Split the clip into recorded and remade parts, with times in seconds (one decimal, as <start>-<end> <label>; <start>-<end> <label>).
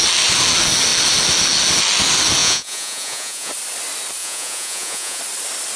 0.0-2.4 recorded; 2.4-3.5 remade; 3.5-4.2 recorded; 4.2-5.2 remade; 5.2-5.8 recorded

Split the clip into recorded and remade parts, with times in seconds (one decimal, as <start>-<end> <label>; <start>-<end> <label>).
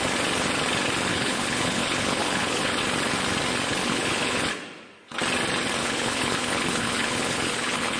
0.0-1.1 recorded; 1.1-2.8 remade; 2.8-3.8 recorded; 3.8-4.5 remade; 4.5-5.8 recorded; 5.8-8.0 remade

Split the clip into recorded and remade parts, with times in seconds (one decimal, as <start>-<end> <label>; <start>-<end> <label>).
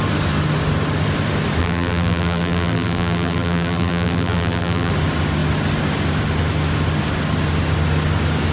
0.0-1.6 recorded; 1.6-4.9 remade; 4.9-8.5 recorded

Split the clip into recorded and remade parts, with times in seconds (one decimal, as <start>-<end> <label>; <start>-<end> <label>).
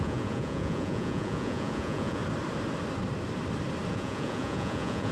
0.0-2.2 remade; 2.2-3.9 recorded; 3.9-5.1 remade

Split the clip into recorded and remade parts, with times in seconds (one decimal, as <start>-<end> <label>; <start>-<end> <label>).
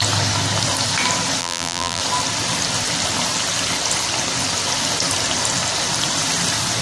0.0-1.4 recorded; 1.4-2.0 remade; 2.0-6.8 recorded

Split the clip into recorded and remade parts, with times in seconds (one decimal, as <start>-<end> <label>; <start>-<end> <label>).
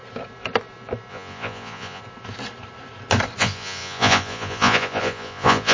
0.0-1.1 recorded; 1.1-2.0 remade; 2.0-3.4 recorded; 3.4-5.7 remade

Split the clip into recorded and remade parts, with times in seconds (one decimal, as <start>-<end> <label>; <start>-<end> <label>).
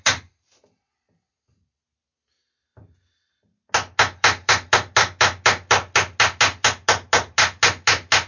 0.0-8.3 recorded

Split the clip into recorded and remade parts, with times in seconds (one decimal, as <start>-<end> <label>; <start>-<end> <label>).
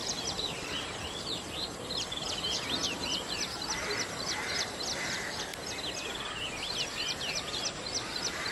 0.0-5.5 remade; 5.5-7.3 recorded; 7.3-8.5 remade